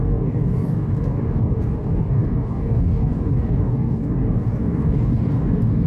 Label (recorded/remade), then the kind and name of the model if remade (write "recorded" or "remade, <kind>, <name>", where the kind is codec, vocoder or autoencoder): remade, codec, DAC